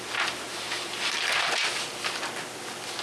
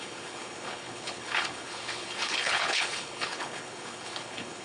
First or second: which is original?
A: first